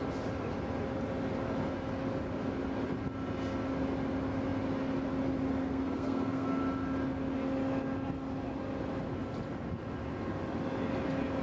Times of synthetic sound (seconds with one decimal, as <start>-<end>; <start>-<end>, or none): 5.6-6.6